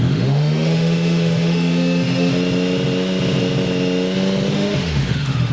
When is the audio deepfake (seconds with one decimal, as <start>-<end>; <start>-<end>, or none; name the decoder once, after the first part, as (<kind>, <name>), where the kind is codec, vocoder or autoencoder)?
0.0-2.3 (autoencoder, DAC-VAE); 4.5-5.5